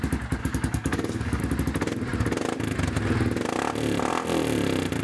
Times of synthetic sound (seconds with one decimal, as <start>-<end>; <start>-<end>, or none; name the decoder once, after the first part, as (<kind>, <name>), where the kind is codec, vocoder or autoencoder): 0.4-1.4 (codec, DAC)

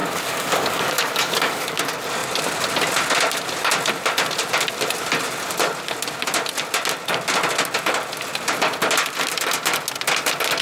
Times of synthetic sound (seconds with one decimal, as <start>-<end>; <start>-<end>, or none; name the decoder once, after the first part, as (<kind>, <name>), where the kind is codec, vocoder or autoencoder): 0.0-1.8 (codec, DAC)

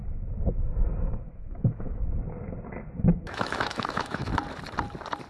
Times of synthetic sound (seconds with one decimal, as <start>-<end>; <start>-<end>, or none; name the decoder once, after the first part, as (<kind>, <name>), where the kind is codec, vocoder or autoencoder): 1.0-2.0 (autoencoder, DAC-VAE); 3.0-4.3

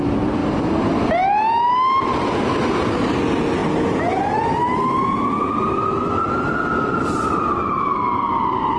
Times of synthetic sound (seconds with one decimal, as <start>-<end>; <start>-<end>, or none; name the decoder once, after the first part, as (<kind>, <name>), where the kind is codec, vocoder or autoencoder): none

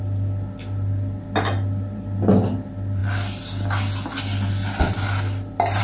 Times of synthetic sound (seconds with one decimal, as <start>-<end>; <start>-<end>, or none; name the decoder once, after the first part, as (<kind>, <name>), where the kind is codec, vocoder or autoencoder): none